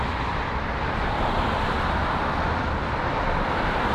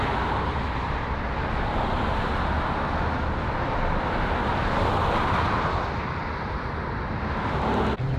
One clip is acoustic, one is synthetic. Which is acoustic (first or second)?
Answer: second